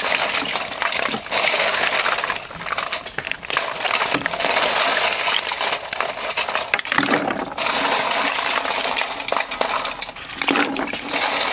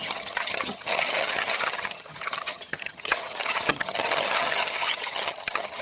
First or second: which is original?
first